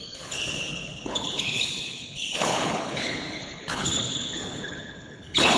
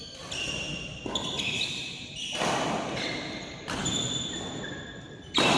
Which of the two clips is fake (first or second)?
first